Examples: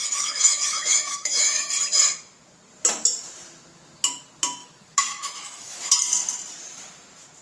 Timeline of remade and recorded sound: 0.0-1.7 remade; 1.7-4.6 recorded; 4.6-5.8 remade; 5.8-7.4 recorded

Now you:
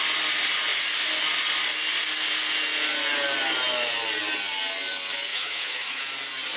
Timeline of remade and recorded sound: 0.0-5.3 recorded; 5.3-6.0 remade; 6.0-6.6 recorded